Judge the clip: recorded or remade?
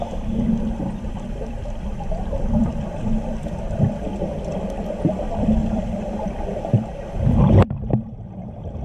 remade